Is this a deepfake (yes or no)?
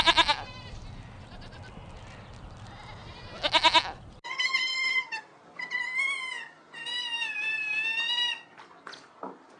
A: no